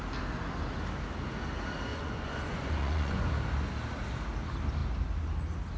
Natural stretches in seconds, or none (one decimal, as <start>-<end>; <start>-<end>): 0.0-1.9; 3.3-5.8